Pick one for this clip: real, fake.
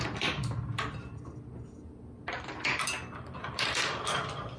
real